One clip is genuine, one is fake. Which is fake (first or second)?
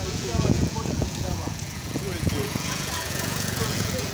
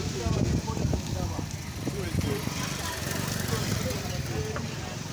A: first